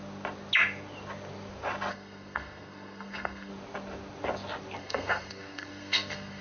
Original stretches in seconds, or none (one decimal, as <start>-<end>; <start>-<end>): 0.0-1.9; 3.5-4.8